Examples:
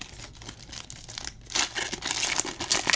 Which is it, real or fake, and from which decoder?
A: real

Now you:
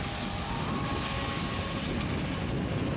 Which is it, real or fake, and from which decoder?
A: real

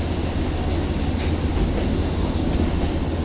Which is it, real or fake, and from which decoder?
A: real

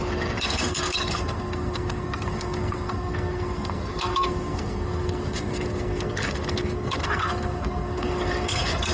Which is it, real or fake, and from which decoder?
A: fake, codec, SNAC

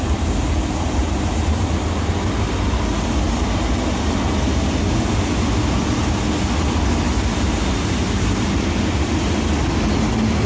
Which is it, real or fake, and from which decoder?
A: real